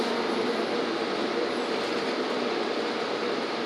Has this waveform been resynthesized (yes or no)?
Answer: no